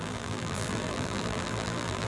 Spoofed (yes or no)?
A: yes